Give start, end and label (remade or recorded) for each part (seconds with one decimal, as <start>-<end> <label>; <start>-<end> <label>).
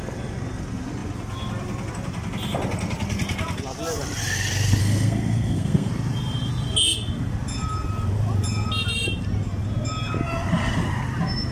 0.0-4.8 recorded; 4.8-5.9 remade; 5.9-11.5 recorded